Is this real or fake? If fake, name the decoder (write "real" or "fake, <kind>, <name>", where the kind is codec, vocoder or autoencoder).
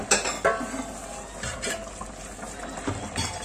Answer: real